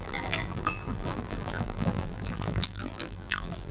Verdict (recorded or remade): remade